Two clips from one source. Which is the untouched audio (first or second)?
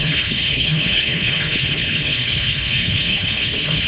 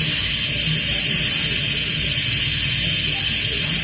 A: second